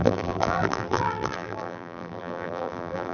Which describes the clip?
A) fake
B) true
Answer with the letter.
A